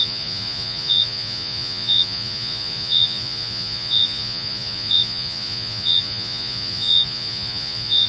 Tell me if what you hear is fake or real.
fake